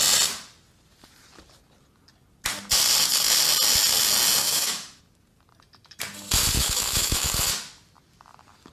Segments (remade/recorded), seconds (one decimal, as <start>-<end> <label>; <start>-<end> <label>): 0.0-4.4 recorded; 4.4-5.0 remade; 5.0-6.4 recorded; 6.4-7.5 remade; 7.5-8.7 recorded